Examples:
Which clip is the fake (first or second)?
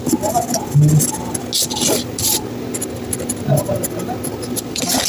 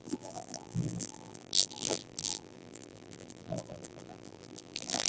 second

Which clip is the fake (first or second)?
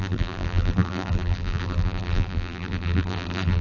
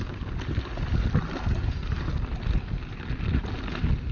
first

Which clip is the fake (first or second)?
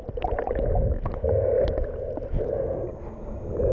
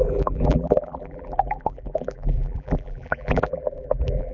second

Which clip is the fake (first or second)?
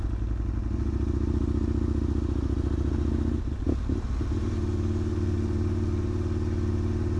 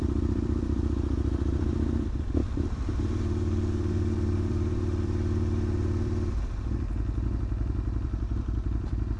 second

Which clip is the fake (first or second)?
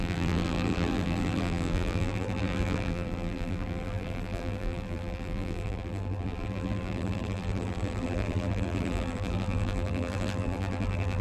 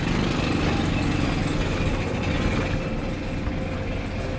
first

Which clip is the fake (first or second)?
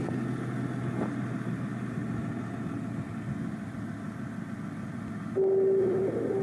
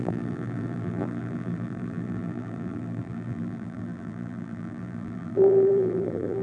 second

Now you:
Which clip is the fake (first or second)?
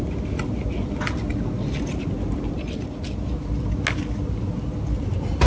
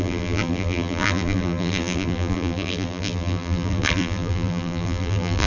second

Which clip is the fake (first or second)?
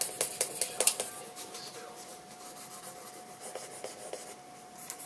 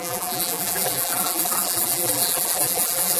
second